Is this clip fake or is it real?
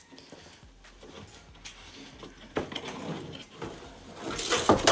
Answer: real